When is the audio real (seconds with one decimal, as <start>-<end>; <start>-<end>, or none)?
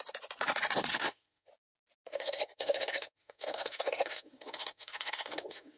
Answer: 0.0-0.9; 1.5-2.1